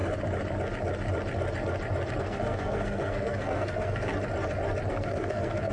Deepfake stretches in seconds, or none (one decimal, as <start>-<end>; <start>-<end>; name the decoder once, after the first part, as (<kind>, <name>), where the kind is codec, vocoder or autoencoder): 2.2-4.1 (codec, SNAC); 4.9-5.7